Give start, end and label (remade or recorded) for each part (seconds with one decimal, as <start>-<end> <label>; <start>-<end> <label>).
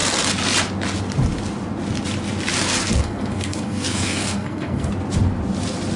0.0-2.8 recorded; 2.8-4.9 remade; 4.9-6.0 recorded